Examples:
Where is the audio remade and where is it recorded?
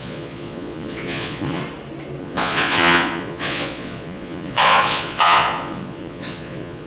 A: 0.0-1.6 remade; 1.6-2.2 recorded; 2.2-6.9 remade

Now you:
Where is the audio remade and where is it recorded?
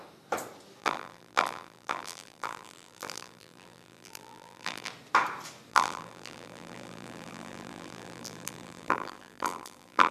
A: 0.0-0.8 recorded; 0.8-4.9 remade; 4.9-5.7 recorded; 5.7-10.1 remade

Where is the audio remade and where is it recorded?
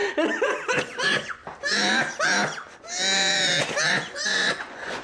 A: 0.0-0.7 recorded; 0.7-1.4 remade; 1.4-3.9 recorded; 3.9-5.0 remade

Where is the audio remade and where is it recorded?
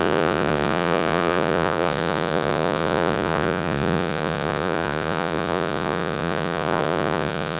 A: 0.0-7.6 remade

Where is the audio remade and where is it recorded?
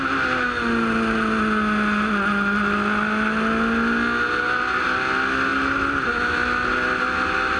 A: 0.0-7.6 recorded